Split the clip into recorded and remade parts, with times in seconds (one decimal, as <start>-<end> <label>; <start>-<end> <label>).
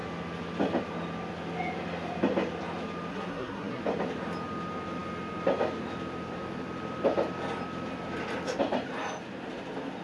0.0-3.1 recorded; 3.1-3.8 remade; 3.8-10.0 recorded